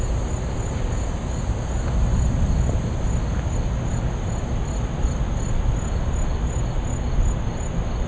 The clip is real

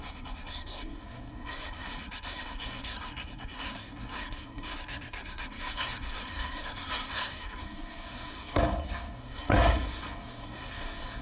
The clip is fake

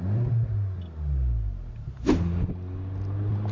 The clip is real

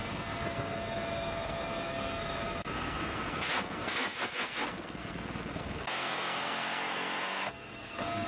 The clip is fake